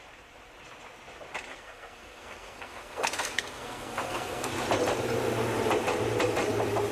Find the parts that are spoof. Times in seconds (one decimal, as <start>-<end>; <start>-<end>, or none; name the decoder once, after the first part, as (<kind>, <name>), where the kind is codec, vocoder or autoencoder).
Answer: 1.5-4.5 (codec, SNAC)